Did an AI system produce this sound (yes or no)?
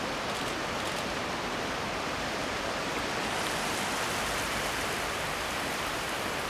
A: yes